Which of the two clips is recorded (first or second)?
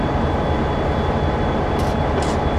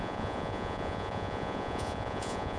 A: first